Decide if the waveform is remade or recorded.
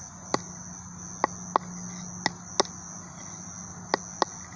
recorded